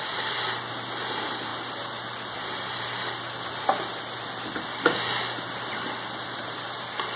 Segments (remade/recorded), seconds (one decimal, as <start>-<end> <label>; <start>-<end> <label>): 0.0-7.2 remade